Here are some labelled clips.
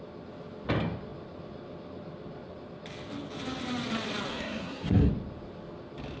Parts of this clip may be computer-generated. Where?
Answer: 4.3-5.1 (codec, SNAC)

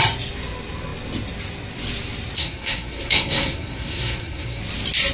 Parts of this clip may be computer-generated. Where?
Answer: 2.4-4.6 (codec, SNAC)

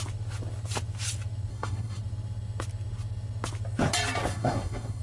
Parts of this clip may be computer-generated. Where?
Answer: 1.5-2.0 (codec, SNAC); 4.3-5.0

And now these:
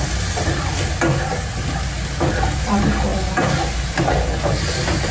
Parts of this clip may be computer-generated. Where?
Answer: none